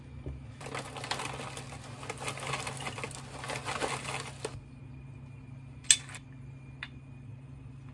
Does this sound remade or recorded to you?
recorded